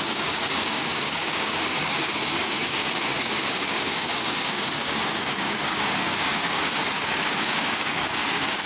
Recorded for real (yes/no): no